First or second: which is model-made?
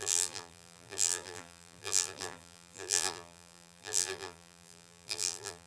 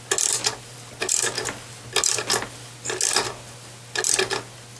first